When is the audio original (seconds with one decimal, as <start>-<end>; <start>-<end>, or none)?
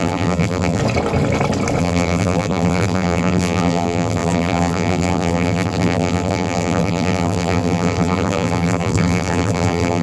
0.8-1.8